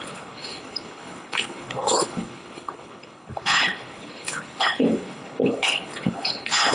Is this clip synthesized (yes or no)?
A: yes